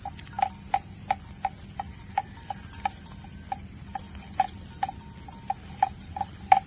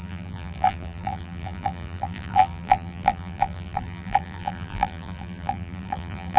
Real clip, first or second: first